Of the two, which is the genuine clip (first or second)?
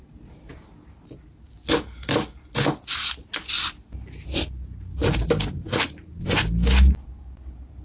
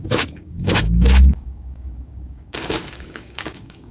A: first